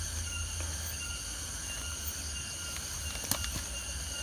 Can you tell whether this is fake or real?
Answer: real